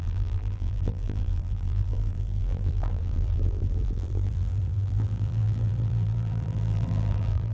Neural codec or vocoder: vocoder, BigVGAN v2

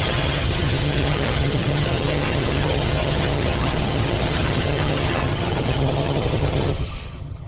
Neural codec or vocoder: vocoder, HiFi-GAN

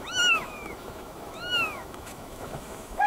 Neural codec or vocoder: autoencoder, DAC-VAE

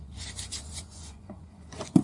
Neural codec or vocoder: vocoder, Vocos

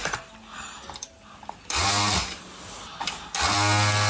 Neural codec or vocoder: none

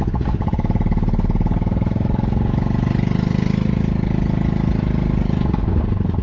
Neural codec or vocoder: none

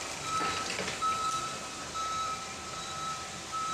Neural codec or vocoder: vocoder, BigVGAN v2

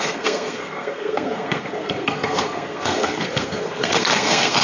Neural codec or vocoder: codec, SNAC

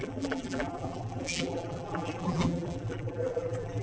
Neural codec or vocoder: vocoder, BigVGAN v2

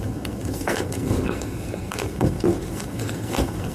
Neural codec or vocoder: codec, SNAC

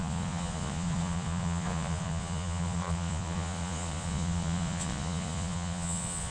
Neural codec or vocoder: vocoder, Vocos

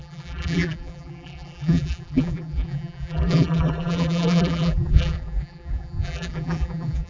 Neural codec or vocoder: vocoder, BigVGAN v2